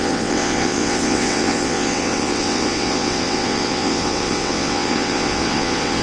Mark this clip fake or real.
fake